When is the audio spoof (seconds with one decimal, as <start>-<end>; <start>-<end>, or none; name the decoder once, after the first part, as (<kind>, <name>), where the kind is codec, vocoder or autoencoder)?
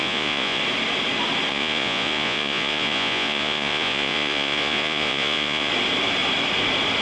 0.0-0.6 (vocoder, Vocos); 1.5-5.7